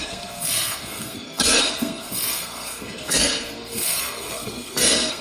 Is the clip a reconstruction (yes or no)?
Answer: yes